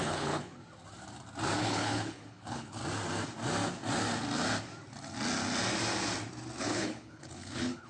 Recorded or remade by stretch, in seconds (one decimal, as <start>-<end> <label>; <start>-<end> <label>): 0.0-0.6 remade; 0.6-1.6 recorded; 1.6-2.8 remade; 2.8-6.6 recorded; 6.6-7.9 remade